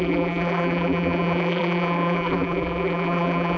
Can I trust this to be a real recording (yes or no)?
no